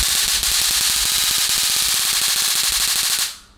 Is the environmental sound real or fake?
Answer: real